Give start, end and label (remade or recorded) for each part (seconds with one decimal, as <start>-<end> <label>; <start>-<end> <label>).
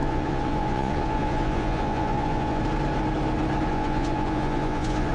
0.0-2.6 remade; 2.6-3.7 recorded; 3.7-5.1 remade